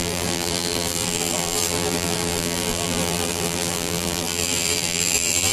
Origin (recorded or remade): remade